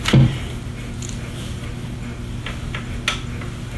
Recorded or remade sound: recorded